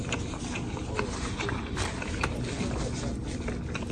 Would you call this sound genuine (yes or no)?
yes